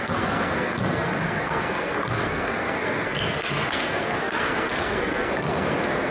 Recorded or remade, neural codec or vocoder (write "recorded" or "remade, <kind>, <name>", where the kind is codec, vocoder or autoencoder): remade, codec, SNAC